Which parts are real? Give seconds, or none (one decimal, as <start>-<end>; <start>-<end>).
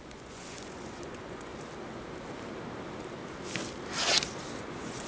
1.5-4.6